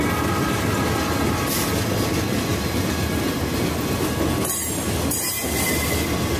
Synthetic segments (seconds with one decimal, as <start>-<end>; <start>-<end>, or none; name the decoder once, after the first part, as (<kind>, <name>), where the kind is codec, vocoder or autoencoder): none